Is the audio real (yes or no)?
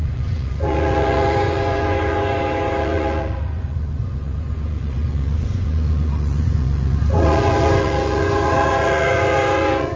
no